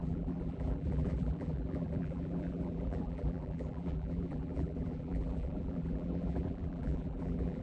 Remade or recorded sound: remade